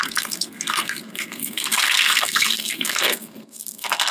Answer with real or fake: fake